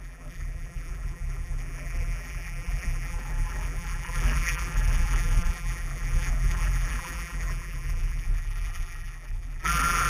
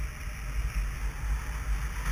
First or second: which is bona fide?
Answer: second